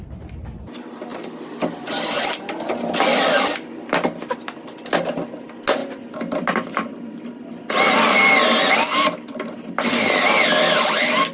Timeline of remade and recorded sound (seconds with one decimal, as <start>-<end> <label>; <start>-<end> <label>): 0.0-11.3 recorded